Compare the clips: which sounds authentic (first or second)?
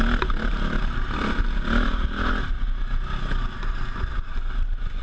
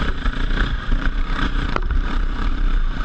first